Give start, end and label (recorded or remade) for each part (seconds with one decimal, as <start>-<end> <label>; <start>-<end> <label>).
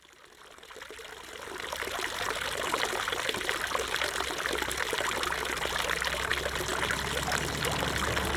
0.0-8.4 recorded